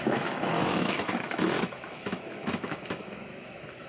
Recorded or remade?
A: remade